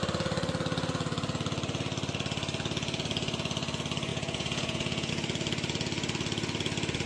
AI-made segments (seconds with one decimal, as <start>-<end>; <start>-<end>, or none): 4.1-5.1